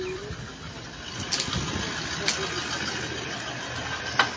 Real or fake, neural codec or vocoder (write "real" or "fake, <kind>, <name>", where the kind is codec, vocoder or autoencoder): real